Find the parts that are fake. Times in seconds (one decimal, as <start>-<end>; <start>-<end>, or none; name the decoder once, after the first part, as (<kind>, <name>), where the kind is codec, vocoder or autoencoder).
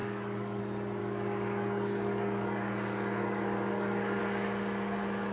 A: 0.0-0.6 (codec, DAC); 1.0-4.2